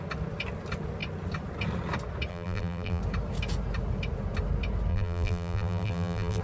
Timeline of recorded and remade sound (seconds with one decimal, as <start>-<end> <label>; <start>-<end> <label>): 0.0-2.3 recorded; 2.3-3.0 remade; 3.0-4.9 recorded; 4.9-6.4 remade